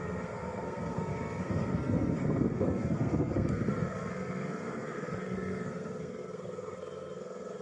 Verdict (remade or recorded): remade